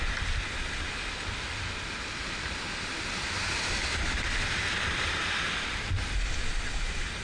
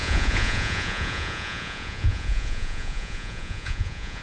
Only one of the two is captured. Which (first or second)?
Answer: first